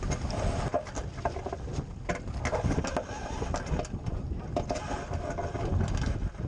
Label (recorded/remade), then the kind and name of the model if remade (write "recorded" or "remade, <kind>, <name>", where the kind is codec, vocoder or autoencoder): recorded